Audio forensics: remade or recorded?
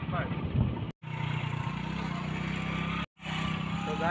recorded